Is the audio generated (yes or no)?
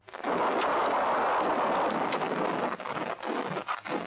no